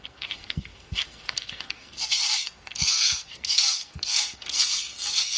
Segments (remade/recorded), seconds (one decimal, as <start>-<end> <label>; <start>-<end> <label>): 0.0-5.4 remade